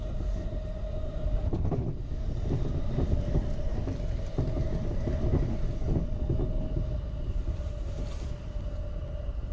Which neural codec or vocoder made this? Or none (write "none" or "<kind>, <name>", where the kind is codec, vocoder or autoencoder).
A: none